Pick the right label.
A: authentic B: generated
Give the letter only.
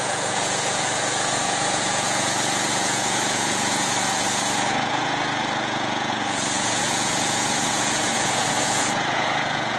B